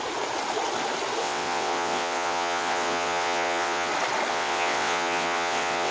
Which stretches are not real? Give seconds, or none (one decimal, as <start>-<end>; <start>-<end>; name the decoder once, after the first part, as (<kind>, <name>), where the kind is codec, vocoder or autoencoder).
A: 1.2-3.9 (vocoder, WaveNeXt); 4.3-5.9